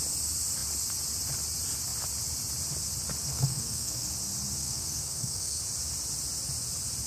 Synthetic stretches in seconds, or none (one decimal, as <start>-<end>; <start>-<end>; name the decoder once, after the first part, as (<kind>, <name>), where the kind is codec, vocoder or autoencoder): 3.3-4.1 (codec, SNAC); 4.6-5.6